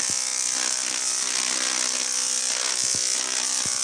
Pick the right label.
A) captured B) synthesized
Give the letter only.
A